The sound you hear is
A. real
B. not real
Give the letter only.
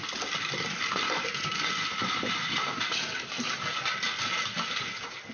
A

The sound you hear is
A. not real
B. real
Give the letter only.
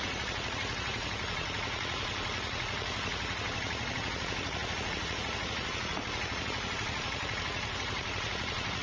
A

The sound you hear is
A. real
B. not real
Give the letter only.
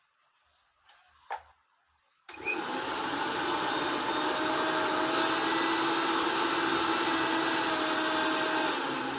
A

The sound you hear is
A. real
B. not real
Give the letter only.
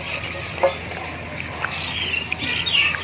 A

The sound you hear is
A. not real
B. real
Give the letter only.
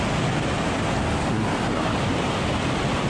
B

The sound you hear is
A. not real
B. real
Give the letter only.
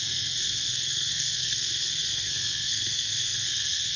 A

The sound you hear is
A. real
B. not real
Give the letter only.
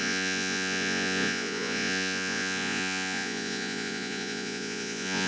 B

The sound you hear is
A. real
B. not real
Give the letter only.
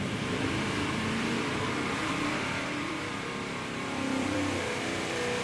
B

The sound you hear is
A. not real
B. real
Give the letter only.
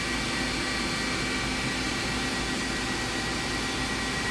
B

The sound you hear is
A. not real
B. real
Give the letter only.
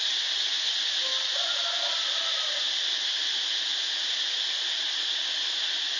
B